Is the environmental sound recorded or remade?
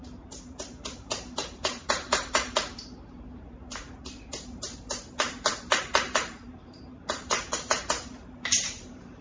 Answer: remade